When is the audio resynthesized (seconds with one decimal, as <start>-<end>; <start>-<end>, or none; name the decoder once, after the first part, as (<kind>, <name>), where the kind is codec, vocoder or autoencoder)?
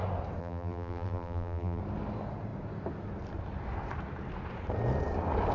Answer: 0.4-1.8 (vocoder, BigVGAN v2)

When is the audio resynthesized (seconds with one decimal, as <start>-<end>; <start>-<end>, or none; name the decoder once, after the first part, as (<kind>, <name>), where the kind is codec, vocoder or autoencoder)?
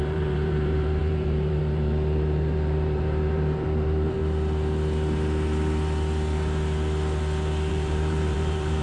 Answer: 0.0-4.2 (vocoder, BigVGAN v2); 7.7-8.8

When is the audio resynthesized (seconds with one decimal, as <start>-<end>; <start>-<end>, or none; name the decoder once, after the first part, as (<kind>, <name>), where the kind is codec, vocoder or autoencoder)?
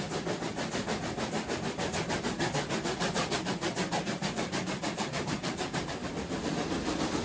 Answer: 3.2-6.1 (vocoder, BigVGAN v2)